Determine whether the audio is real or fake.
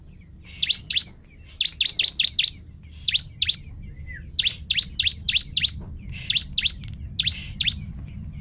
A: real